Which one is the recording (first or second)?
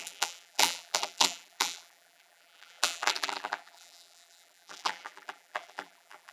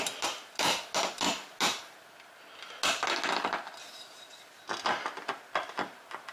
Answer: second